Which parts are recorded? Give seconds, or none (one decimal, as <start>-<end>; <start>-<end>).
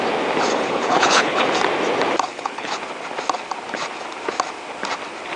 0.0-0.5; 1.4-2.3; 2.8-5.4